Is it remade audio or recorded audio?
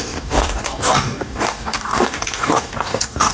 remade